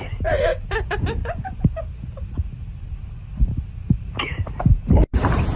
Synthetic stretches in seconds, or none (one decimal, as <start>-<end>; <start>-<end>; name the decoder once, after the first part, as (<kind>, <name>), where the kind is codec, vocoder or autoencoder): 0.5-1.9 (vocoder, BigVGAN v2); 3.8-5.6